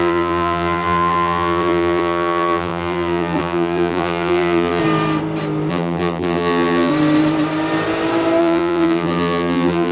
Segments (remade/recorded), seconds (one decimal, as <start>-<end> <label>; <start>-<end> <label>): 0.0-4.8 remade; 4.8-5.7 recorded; 5.7-6.9 remade; 6.9-8.4 recorded; 8.4-9.9 remade